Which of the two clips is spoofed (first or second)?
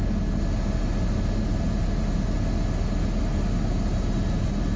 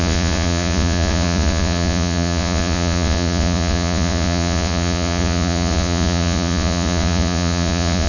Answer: second